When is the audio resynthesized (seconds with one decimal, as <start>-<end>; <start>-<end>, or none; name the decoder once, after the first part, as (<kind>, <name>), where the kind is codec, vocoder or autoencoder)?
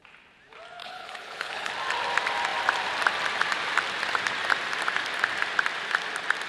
0.8-1.7 (codec, HILCodec)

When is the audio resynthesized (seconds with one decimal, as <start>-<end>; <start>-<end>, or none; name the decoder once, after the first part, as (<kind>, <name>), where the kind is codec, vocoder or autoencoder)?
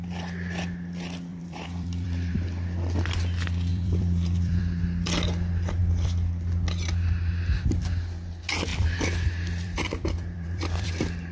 1.3-2.3 (vocoder, BigVGAN v2); 3.7-4.8; 8.7-10.9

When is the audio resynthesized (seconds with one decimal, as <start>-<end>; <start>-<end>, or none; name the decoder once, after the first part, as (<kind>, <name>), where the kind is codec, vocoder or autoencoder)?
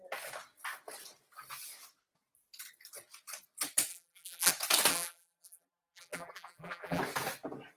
3.9-4.5 (vocoder, BigVGAN v2); 4.9-7.0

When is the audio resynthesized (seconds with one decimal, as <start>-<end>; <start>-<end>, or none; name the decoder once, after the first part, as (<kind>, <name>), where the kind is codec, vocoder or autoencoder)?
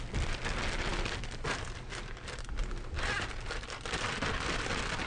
none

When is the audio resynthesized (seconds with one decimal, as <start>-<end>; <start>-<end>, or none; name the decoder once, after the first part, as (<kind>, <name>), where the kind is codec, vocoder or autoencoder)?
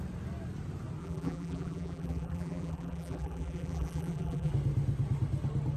1.0-4.5 (vocoder, BigVGAN v2)